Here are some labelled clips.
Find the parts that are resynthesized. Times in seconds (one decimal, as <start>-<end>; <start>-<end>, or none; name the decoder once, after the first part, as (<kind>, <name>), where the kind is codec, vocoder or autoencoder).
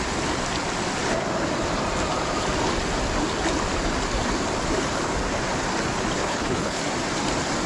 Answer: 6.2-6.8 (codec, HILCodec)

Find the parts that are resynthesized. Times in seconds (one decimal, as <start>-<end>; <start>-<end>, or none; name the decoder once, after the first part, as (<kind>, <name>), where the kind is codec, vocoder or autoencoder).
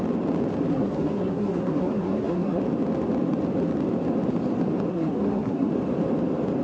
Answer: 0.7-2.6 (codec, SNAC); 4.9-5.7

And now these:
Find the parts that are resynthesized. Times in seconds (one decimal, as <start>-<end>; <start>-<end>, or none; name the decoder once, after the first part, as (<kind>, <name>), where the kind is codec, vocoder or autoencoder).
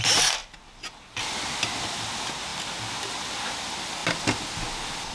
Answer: none